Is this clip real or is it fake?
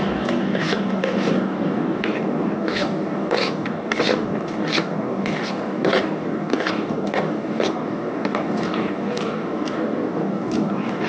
fake